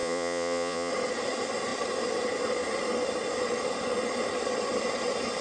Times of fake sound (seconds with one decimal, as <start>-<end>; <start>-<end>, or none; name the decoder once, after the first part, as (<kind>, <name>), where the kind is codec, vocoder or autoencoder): 0.0-0.9 (vocoder, Vocos)